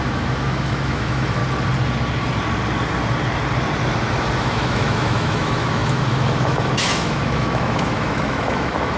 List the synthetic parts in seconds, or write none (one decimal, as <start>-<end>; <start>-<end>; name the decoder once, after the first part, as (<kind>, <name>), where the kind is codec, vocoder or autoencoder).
0.0-1.4 (autoencoder, DAC-VAE); 4.4-9.0

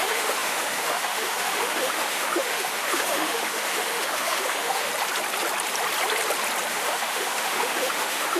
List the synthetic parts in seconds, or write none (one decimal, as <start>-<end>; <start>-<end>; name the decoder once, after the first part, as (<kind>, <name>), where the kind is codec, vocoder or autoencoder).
0.0-4.9 (autoencoder, DAC-VAE); 6.7-8.4

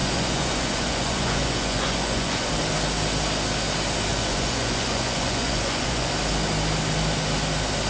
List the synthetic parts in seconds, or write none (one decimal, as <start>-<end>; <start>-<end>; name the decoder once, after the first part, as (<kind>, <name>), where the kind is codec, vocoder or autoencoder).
0.0-2.5 (vocoder, Vocos); 4.1-6.1

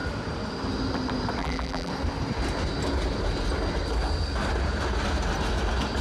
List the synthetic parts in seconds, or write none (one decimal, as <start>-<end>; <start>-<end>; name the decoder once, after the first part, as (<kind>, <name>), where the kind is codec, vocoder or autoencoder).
1.4-1.9 (vocoder, BigVGAN v2)

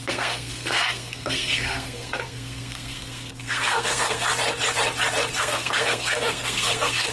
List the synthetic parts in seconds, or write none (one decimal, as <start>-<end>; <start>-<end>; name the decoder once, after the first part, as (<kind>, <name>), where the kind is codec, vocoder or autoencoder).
0.0-4.3 (codec, SNAC); 5.4-7.1

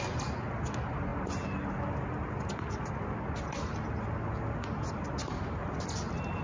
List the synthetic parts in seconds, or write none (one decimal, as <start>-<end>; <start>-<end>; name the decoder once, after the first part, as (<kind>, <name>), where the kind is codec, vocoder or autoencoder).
none